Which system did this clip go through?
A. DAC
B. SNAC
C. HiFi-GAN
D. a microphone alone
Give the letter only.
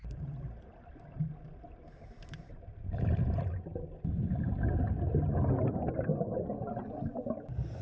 D